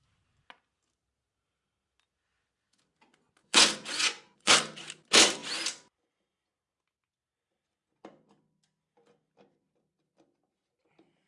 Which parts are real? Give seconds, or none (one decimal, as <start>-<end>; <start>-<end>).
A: 0.0-3.4; 4.5-11.3